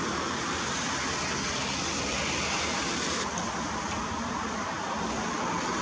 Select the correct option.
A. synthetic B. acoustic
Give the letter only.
B